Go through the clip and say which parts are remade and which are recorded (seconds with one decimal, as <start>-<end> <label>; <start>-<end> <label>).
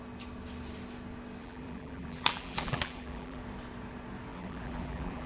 0.0-1.4 recorded; 1.4-3.4 remade; 3.4-4.3 recorded; 4.3-5.3 remade